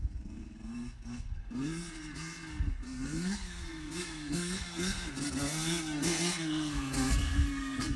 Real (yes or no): no